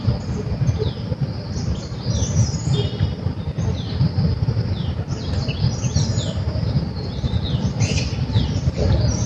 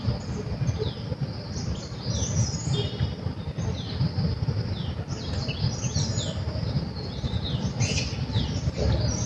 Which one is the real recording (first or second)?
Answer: second